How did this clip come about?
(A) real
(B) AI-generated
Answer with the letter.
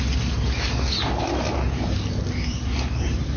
A